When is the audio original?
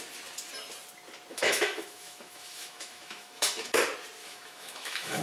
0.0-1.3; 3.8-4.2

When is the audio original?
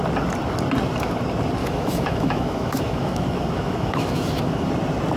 0.0-1.6; 4.7-5.2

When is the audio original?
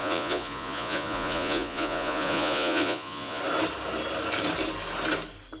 3.4-5.6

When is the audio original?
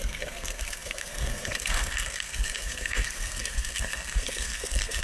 none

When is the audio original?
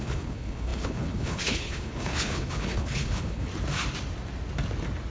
3.5-5.1